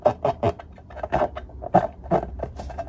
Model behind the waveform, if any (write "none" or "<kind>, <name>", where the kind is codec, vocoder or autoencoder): none